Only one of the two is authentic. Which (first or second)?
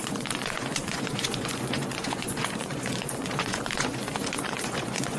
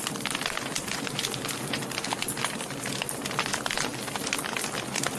second